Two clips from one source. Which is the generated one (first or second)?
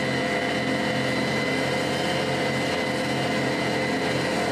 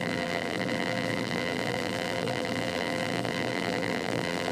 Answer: second